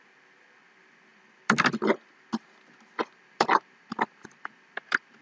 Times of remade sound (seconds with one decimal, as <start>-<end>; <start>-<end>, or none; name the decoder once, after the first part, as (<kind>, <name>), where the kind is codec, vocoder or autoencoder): 1.1-2.3 (vocoder, BigVGAN v2); 3.0-5.2